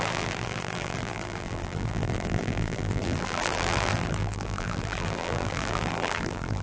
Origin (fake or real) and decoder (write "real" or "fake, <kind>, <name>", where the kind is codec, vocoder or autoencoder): fake, vocoder, BigVGAN v2